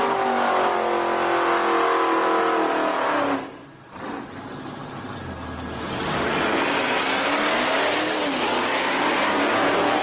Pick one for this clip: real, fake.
real